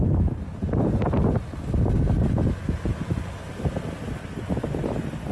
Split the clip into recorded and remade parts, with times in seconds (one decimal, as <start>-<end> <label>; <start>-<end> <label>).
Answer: 0.0-5.3 recorded